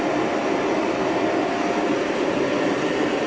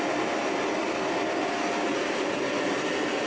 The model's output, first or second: first